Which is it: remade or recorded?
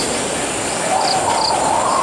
recorded